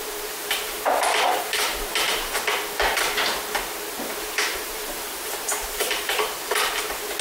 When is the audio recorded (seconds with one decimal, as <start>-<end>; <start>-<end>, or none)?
0.0-0.4; 2.4-4.5; 6.3-7.2